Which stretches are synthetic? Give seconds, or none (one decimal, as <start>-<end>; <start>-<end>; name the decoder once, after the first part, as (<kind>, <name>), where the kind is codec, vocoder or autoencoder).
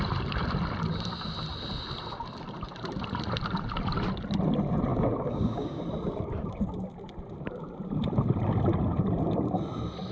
4.9-5.8 (codec, DAC)